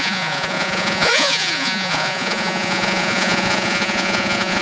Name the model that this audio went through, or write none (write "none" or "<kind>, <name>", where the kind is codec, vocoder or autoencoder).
vocoder, Vocos